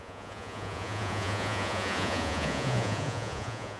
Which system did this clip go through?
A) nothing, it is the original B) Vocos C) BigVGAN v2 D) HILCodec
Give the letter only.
B